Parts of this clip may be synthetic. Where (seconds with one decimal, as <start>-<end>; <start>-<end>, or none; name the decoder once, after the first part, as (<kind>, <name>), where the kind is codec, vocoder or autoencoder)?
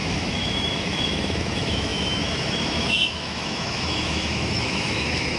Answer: 0.0-5.4 (autoencoder, DAC-VAE)